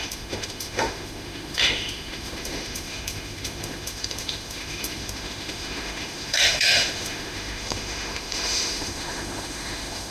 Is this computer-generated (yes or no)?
yes